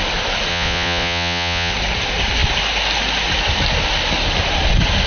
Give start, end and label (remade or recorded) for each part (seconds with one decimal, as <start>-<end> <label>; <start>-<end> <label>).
0.0-0.5 recorded; 0.5-1.7 remade; 1.7-5.1 recorded